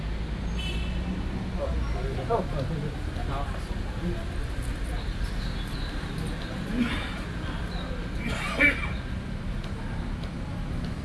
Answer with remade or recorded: recorded